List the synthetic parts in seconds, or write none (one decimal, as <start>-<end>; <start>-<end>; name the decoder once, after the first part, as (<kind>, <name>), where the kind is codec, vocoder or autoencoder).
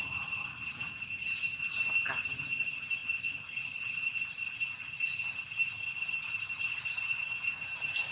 0.0-3.0 (vocoder, BigVGAN v2); 6.3-8.1